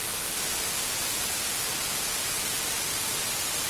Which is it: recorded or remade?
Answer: recorded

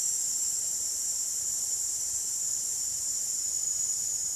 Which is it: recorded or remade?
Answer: remade